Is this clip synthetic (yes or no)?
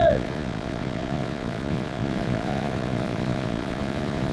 yes